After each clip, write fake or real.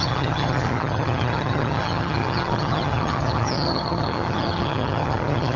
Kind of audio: fake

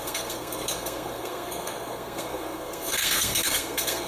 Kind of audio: fake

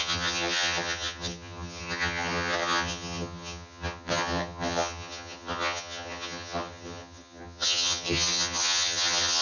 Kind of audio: fake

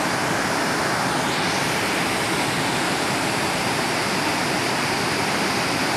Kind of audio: real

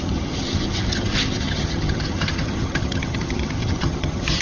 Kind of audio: fake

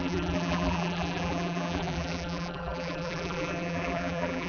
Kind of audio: fake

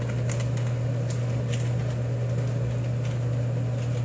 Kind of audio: real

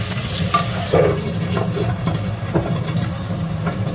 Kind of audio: real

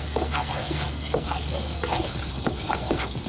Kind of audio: fake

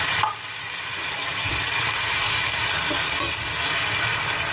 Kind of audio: real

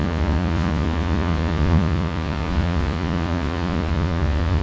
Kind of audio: fake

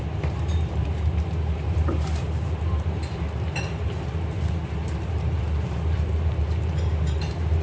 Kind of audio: fake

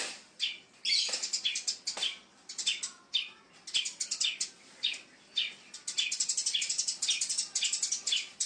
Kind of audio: real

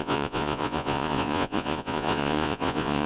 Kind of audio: fake